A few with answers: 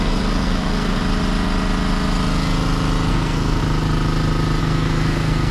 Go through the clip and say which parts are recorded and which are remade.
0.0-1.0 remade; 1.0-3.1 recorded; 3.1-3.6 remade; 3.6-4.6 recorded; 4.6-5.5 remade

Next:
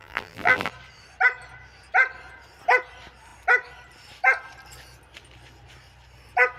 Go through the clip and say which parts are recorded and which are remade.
0.0-0.7 remade; 0.7-6.6 recorded

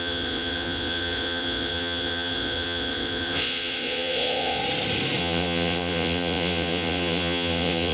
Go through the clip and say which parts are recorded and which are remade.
0.0-4.6 remade; 4.6-5.2 recorded; 5.2-7.9 remade

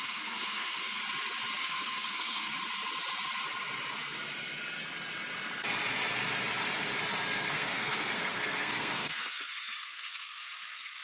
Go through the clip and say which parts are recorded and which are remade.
0.0-1.0 remade; 1.0-1.6 recorded; 1.6-2.5 remade; 2.5-7.5 recorded; 7.5-11.0 remade

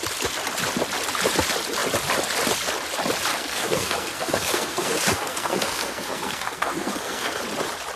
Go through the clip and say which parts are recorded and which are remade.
0.0-3.3 recorded; 3.3-7.4 remade; 7.4-8.0 recorded

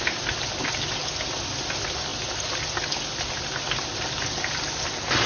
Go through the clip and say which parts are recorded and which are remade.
0.0-5.3 recorded

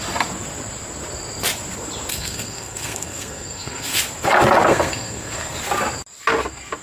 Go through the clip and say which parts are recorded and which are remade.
0.0-2.1 recorded; 2.1-4.0 remade; 4.0-4.7 recorded; 4.7-5.6 remade; 5.6-6.8 recorded

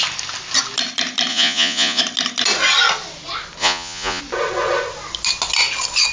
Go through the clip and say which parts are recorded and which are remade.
0.0-1.3 recorded; 1.3-2.0 remade; 2.0-3.6 recorded; 3.6-4.2 remade; 4.2-6.1 recorded